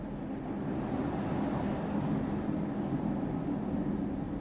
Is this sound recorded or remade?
recorded